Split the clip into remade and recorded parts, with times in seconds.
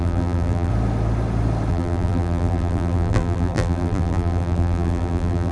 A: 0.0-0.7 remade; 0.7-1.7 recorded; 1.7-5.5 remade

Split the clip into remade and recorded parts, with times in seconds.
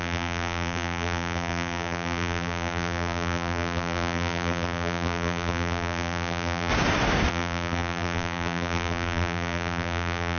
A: 0.0-6.7 remade; 6.7-7.3 recorded; 7.3-10.4 remade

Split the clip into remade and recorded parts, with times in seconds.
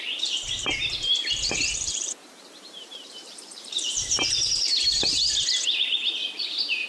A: 0.0-5.1 remade; 5.1-6.4 recorded; 6.4-6.9 remade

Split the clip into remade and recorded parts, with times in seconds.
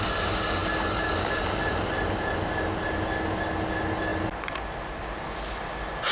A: 0.0-6.1 recorded